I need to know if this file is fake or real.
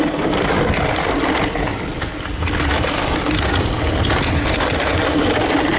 real